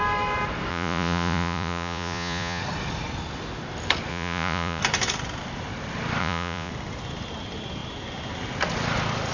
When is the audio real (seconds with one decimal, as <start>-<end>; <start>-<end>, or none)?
0.0-0.7; 2.6-4.1; 4.8-6.2; 6.7-9.3